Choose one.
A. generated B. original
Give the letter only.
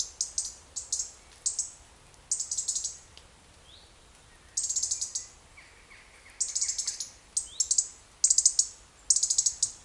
B